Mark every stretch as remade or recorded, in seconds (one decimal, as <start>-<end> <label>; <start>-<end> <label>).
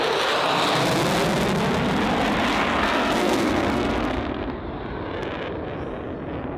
0.0-2.5 recorded; 2.5-4.6 remade; 4.6-6.6 recorded